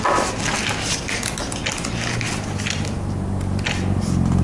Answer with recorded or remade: recorded